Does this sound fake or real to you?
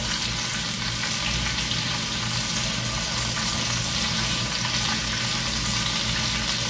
real